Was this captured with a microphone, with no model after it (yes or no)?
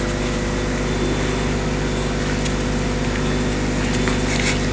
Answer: yes